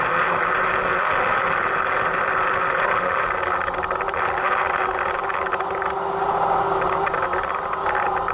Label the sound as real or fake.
real